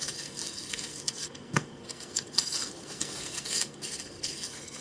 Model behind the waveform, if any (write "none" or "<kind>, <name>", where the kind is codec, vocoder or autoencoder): codec, SNAC